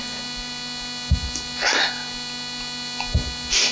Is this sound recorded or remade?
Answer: recorded